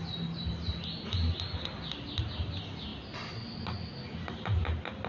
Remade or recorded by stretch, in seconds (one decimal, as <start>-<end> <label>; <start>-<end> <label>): 0.0-5.1 recorded